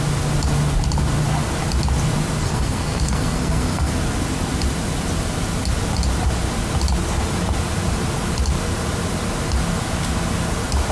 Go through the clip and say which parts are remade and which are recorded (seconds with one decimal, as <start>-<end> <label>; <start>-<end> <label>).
0.0-2.4 recorded; 2.4-3.9 remade; 3.9-10.9 recorded